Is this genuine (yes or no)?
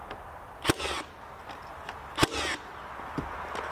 yes